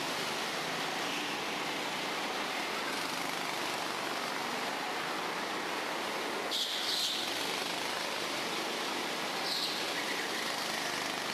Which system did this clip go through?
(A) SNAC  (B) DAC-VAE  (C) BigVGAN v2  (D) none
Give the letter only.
D